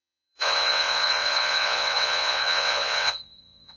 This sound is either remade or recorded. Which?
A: remade